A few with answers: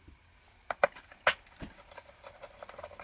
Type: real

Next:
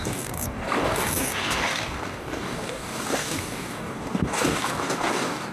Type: fake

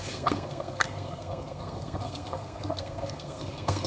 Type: fake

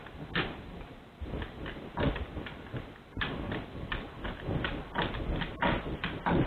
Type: real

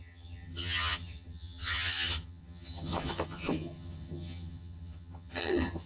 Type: fake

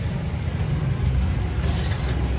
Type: real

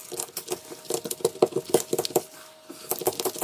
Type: real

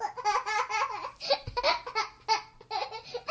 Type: real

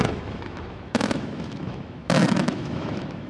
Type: fake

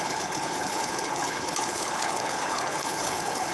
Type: fake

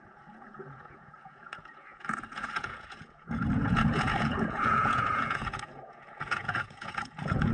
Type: fake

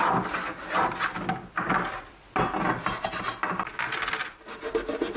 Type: real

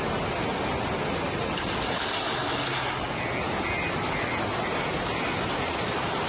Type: real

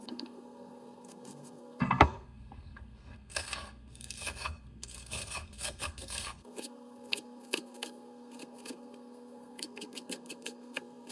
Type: fake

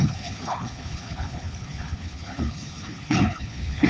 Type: fake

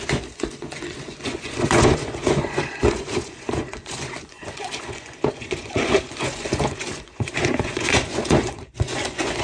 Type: fake